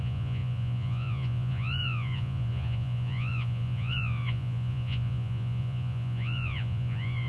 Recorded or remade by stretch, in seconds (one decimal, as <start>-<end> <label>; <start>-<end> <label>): 0.0-7.3 remade